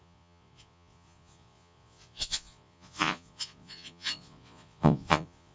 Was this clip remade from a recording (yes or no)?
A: yes